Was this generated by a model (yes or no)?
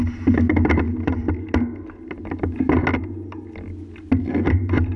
no